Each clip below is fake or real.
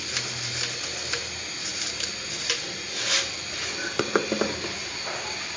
real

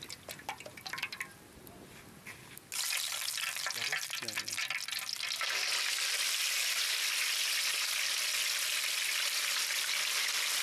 real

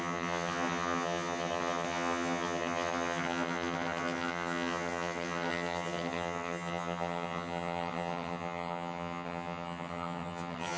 fake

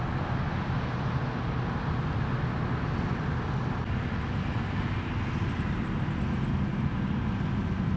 real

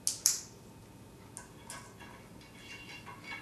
real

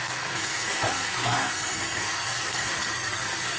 fake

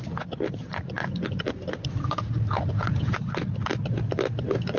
real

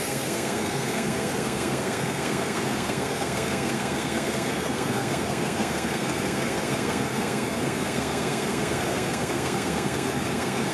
fake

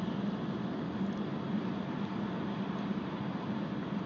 real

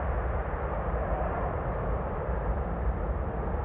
real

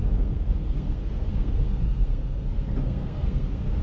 fake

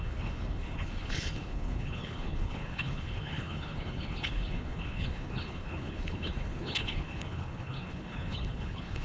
fake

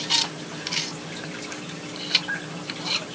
real